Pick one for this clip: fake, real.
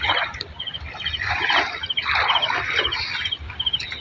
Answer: real